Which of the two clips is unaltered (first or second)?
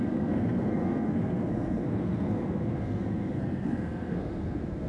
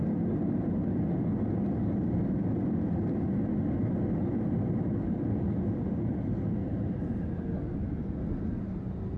second